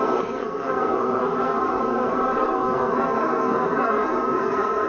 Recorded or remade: remade